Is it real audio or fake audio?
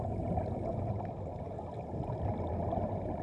real